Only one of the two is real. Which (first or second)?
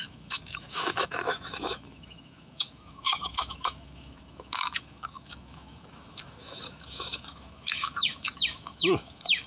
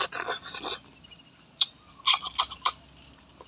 second